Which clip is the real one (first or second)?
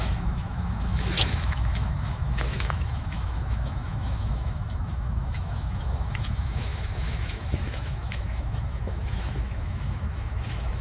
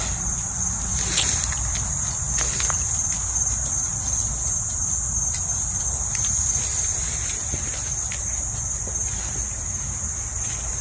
second